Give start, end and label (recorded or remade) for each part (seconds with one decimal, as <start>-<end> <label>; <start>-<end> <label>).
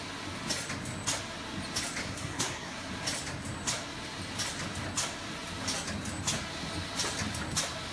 0.0-2.0 recorded; 2.0-2.9 remade; 2.9-7.9 recorded